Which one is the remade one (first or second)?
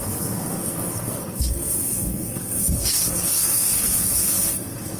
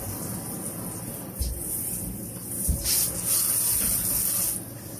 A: first